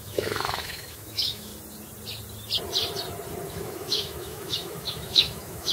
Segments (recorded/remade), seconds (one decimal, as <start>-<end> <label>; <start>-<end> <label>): 0.0-1.5 remade; 1.5-3.5 recorded; 3.5-5.7 remade